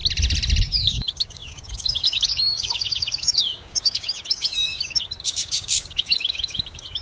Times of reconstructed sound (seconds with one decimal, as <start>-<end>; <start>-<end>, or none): 0.6-7.0